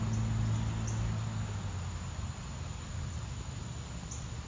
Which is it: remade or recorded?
recorded